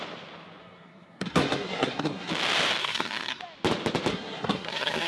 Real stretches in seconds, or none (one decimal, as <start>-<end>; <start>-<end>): 0.0-0.6; 2.3-2.8; 3.4-4.1